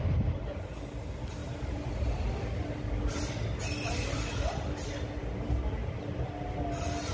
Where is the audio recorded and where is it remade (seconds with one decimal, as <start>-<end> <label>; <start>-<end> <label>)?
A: 0.0-1.4 recorded; 1.4-1.9 remade; 1.9-7.1 recorded